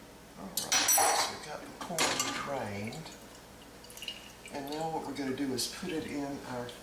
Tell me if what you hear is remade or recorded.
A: recorded